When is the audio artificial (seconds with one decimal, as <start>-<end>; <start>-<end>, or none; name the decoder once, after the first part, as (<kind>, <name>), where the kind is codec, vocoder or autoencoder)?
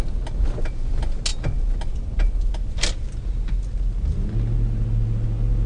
none